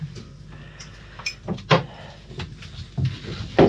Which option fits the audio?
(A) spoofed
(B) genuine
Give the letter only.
B